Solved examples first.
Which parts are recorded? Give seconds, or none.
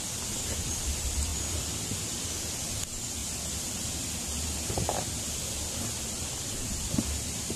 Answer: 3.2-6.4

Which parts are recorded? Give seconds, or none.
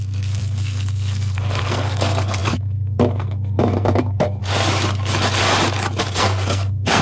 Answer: 4.4-6.0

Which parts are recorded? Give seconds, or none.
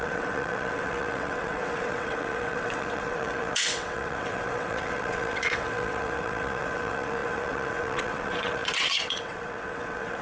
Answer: none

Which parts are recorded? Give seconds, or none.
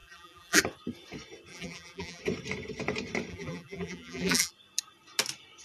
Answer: 0.6-1.5; 2.2-3.3; 4.5-5.6